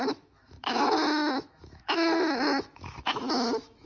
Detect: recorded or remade remade